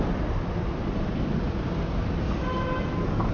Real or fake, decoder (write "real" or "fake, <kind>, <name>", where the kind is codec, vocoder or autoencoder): real